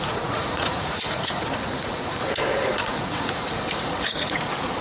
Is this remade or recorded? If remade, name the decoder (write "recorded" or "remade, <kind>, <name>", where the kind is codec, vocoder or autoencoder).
remade, vocoder, Vocos